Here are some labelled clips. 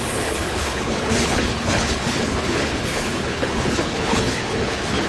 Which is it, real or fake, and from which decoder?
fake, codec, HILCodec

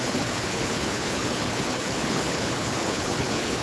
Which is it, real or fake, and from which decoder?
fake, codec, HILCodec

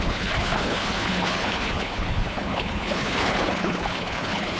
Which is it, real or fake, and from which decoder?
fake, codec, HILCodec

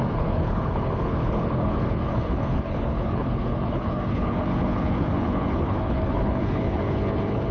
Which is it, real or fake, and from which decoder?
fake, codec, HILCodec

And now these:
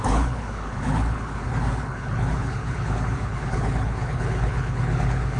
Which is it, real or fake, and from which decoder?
fake, codec, HILCodec